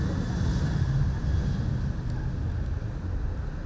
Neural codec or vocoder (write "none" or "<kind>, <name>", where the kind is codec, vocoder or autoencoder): none